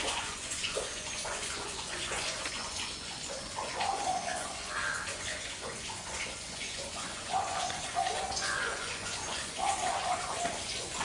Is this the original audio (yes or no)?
no